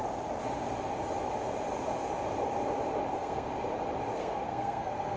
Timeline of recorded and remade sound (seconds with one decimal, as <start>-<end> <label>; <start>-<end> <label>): 0.0-3.1 recorded; 3.1-3.5 remade; 3.5-4.2 recorded; 4.2-5.2 remade